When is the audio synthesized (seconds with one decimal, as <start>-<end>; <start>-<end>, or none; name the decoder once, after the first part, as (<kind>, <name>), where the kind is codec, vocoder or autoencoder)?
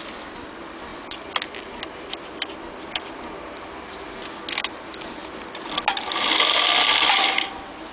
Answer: none